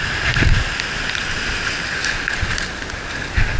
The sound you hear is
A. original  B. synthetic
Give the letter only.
A